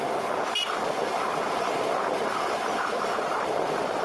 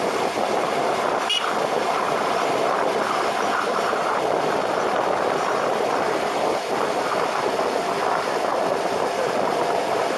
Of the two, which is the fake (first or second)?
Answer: second